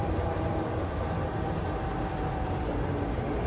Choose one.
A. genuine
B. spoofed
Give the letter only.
A